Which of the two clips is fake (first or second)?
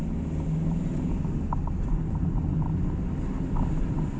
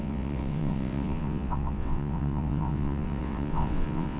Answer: second